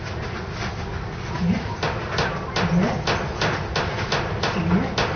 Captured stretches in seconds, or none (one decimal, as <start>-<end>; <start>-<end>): 0.0-5.2